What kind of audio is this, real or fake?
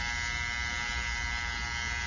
real